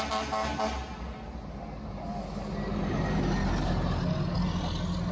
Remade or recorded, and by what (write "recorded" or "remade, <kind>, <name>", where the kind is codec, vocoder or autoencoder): recorded